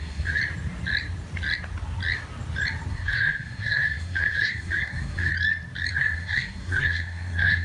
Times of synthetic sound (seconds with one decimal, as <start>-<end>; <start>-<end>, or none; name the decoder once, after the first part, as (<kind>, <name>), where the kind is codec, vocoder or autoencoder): 0.0-0.4 (codec, SNAC); 2.9-5.3; 5.9-7.6